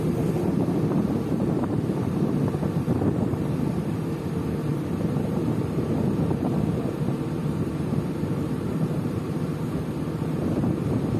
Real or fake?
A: fake